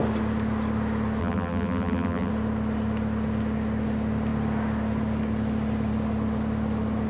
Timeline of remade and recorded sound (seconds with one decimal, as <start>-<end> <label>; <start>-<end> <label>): 0.0-1.2 recorded; 1.2-2.3 remade; 2.3-7.1 recorded